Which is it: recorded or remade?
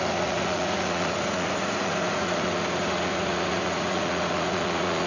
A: remade